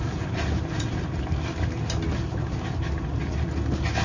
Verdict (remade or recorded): recorded